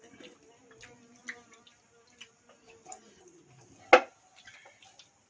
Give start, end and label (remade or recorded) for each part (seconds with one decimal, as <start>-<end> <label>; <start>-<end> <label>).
0.0-5.3 recorded